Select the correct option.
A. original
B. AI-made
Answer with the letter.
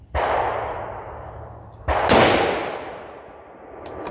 A